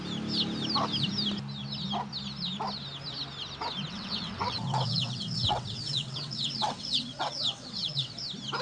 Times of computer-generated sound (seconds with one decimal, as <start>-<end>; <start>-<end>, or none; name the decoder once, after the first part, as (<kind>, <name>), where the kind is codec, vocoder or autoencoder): 3.9-8.2 (vocoder, WaveNeXt)